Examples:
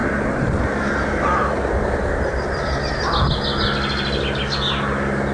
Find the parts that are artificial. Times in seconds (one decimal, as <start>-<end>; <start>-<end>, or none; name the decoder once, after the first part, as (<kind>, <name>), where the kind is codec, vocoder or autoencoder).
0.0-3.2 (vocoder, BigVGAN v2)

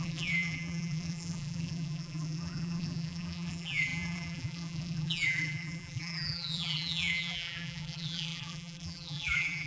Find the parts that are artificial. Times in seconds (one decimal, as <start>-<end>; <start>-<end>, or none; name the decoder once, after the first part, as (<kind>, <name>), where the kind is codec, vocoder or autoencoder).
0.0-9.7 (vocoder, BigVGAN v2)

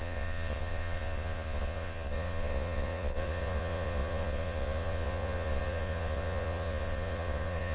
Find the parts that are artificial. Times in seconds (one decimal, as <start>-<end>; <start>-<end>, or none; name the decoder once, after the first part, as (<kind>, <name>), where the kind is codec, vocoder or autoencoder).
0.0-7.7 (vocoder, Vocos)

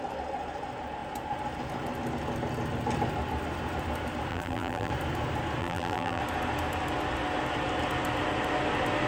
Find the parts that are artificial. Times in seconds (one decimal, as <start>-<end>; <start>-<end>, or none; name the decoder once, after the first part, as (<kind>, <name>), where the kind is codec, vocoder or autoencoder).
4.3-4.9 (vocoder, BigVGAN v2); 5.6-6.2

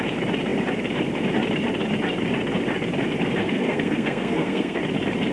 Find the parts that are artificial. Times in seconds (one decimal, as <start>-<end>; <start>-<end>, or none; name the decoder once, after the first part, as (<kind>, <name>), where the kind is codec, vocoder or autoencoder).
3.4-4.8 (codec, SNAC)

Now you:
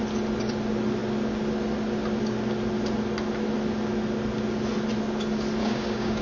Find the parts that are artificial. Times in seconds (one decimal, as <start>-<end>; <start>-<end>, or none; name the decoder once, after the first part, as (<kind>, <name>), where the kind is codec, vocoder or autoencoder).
5.6-6.2 (codec, DAC)